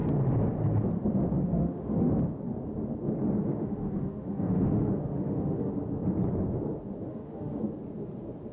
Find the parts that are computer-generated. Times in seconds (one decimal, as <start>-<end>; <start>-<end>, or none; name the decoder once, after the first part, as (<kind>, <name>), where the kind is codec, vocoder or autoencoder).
1.4-2.1 (autoencoder, DAC-VAE); 3.4-5.7; 7.1-7.6